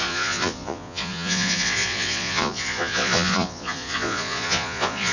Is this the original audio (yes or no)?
no